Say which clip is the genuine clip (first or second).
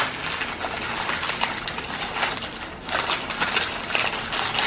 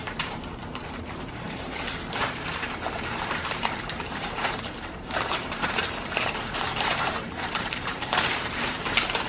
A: first